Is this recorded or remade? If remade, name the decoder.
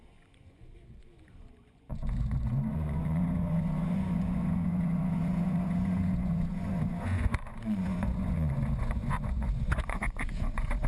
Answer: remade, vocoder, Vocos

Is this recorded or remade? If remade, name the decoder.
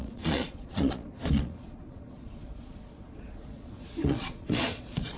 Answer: remade, vocoder, Vocos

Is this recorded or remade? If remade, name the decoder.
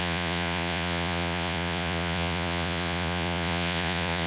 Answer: remade, vocoder, Vocos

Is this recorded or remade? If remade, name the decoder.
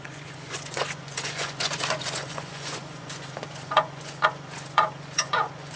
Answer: remade, vocoder, Vocos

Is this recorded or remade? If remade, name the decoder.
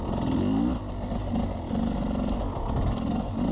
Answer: recorded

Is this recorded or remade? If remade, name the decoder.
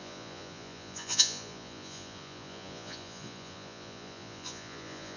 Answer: remade, vocoder, Vocos